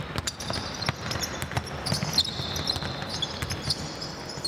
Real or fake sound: real